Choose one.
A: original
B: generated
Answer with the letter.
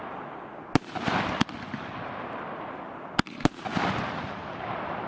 A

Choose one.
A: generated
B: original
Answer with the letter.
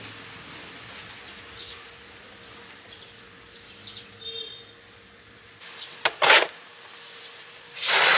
B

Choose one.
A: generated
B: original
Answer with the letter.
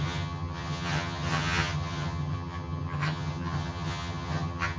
A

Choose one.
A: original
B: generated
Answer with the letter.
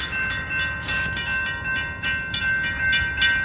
A